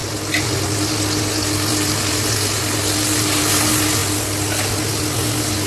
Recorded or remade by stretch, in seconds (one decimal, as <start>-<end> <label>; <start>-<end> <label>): 0.0-5.7 recorded